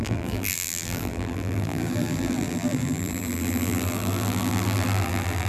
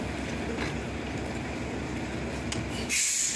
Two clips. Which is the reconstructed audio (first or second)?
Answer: first